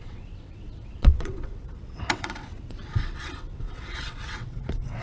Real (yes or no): no